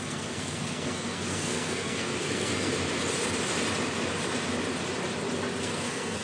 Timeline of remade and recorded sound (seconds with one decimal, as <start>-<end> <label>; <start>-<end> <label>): 0.0-2.7 remade; 2.7-5.6 recorded; 5.6-6.2 remade